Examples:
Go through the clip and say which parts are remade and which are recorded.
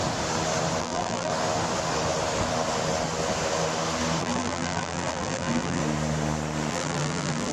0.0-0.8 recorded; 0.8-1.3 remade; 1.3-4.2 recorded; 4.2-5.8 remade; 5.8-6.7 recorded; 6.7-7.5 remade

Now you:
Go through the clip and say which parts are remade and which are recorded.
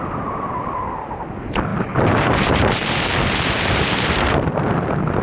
0.0-1.7 recorded; 1.7-4.5 remade; 4.5-5.2 recorded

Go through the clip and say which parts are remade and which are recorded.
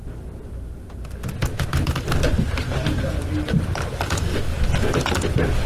0.0-5.7 recorded